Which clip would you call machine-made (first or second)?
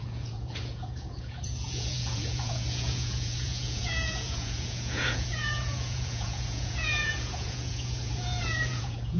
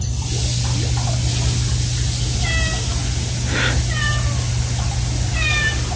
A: first